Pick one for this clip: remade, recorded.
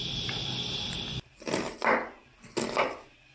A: recorded